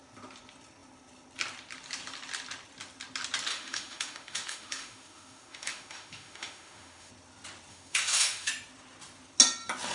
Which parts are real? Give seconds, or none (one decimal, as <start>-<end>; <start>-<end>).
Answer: 0.0-3.5; 7.1-7.7; 8.5-9.9